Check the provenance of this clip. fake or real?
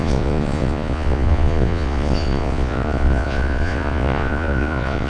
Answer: fake